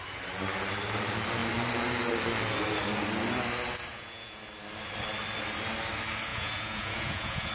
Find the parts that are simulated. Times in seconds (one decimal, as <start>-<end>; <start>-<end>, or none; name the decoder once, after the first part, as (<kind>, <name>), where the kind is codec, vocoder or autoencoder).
3.9-4.4 (vocoder, Vocos); 6.3-7.5